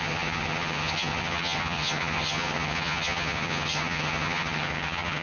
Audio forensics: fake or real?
fake